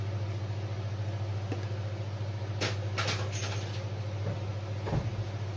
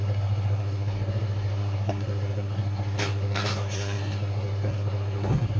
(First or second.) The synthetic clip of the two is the second